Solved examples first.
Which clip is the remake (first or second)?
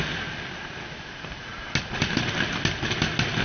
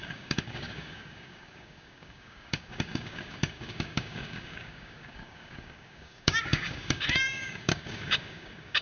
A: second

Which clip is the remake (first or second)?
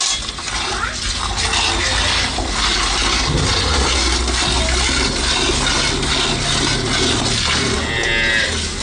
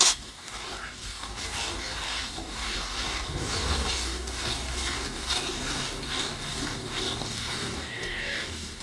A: second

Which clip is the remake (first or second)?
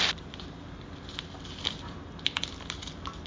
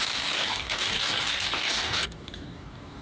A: second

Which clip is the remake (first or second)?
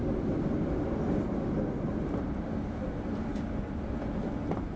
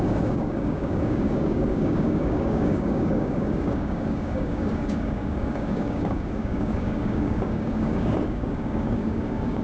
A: second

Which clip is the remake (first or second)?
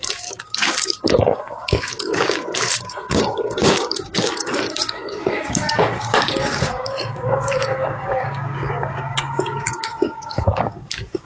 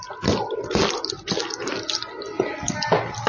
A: first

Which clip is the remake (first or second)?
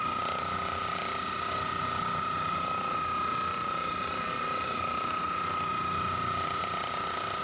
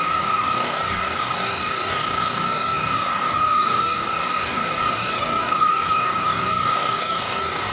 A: second